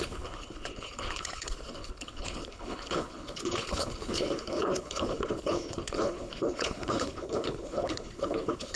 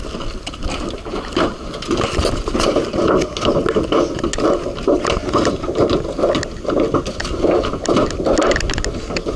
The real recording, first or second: second